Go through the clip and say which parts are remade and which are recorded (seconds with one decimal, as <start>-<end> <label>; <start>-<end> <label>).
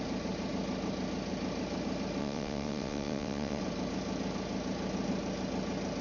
0.0-2.2 recorded; 2.2-3.6 remade; 3.6-6.0 recorded